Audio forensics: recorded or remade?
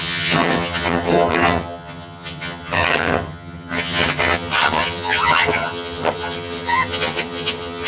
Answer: remade